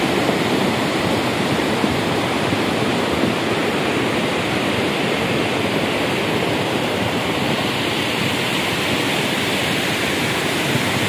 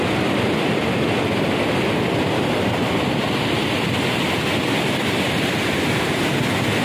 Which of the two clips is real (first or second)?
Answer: second